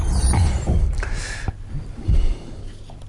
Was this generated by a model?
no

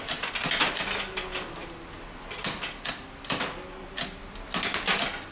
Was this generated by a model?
no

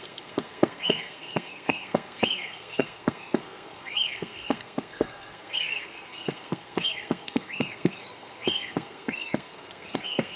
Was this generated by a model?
yes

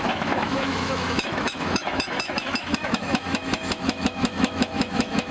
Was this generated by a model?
yes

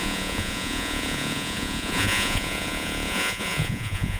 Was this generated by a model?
yes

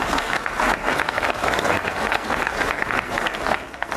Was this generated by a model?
yes